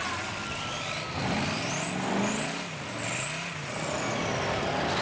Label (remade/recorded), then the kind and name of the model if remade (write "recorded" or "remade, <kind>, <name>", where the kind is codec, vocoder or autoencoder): recorded